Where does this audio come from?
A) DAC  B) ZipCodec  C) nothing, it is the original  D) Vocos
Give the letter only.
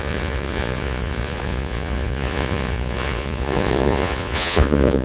D